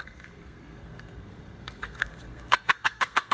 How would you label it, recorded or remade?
remade